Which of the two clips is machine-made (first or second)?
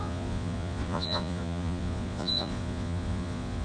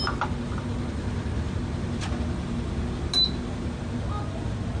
first